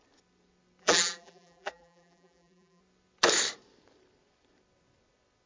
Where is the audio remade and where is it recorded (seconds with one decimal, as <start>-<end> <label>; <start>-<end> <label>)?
0.0-0.8 recorded; 0.8-2.8 remade; 2.8-5.5 recorded